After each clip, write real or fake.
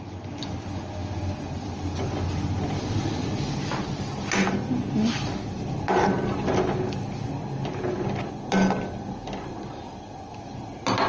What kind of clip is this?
real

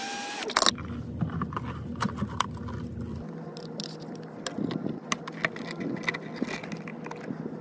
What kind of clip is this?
real